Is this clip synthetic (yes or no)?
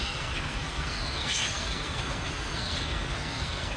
yes